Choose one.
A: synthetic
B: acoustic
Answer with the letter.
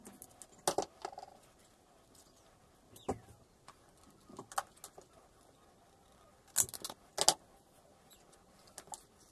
B